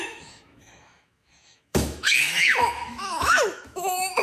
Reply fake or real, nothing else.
fake